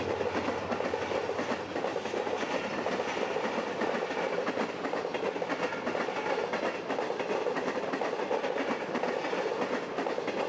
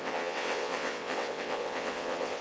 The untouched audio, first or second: first